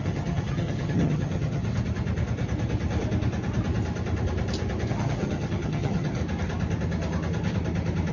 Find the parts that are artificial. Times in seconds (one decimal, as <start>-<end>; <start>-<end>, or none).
0.0-1.6; 4.9-6.2